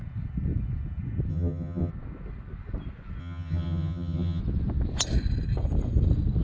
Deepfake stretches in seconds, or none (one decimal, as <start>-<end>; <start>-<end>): 1.3-1.9; 3.2-4.4